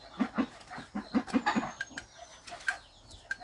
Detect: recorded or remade recorded